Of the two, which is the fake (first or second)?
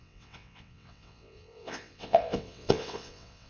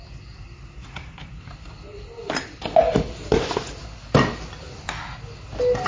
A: first